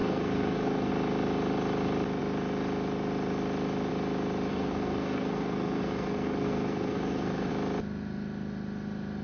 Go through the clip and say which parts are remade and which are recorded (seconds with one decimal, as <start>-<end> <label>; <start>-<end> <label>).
0.0-0.9 remade; 0.9-4.5 recorded; 4.5-7.5 remade; 7.5-9.2 recorded